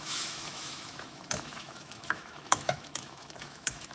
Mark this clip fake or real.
fake